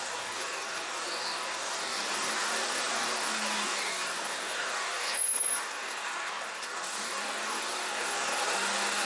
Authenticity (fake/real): fake